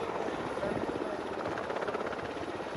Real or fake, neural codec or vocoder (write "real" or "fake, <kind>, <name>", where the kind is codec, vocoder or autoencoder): real